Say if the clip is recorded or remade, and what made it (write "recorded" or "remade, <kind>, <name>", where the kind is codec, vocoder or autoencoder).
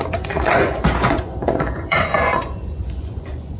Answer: remade, vocoder, Vocos